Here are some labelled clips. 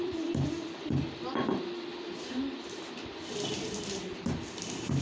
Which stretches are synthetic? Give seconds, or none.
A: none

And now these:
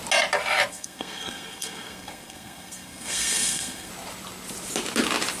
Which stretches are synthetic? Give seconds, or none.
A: 0.7-3.9 (codec, SNAC)

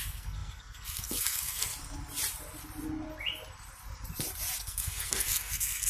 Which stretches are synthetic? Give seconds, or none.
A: 0.0-1.7 (codec, SNAC); 4.6-5.9

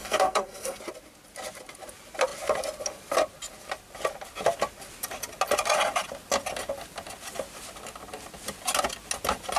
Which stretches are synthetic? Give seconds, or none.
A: 0.0-0.8 (codec, SNAC)

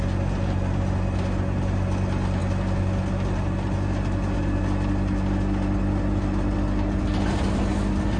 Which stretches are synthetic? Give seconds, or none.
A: none

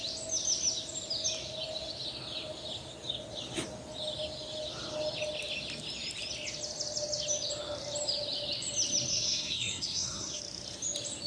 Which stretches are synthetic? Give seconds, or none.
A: 9.1-10.4 (codec, SNAC)

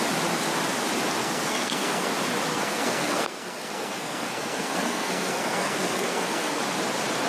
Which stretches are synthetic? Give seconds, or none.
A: 1.2-2.1 (codec, SNAC); 2.5-6.6

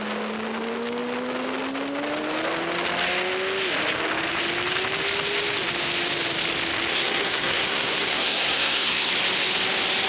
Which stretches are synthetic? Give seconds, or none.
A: 6.9-9.1 (codec, SNAC)